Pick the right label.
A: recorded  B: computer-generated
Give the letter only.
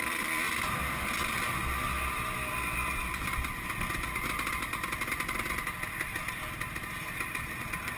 A